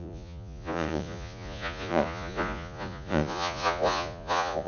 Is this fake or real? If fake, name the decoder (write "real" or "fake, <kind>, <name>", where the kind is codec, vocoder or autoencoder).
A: fake, vocoder, Vocos